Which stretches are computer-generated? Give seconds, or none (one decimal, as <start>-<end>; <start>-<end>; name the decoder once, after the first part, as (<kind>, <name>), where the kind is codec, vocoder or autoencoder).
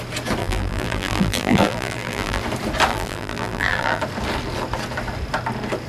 0.4-2.4 (vocoder, BigVGAN v2); 2.9-4.0